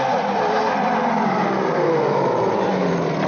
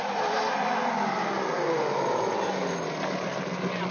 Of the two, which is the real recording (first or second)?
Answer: second